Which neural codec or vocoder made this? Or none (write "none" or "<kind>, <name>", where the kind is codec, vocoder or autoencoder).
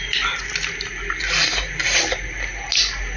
none